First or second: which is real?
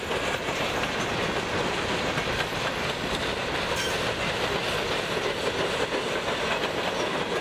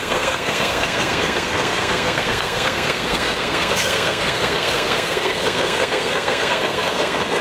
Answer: first